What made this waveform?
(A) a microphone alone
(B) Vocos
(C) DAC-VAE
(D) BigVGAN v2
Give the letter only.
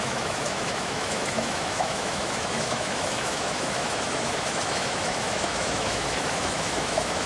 C